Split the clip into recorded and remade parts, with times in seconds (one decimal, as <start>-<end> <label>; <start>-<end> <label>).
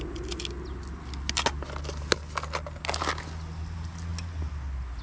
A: 0.0-5.0 recorded